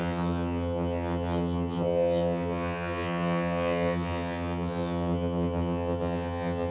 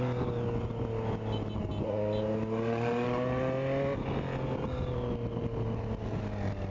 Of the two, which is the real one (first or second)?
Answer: second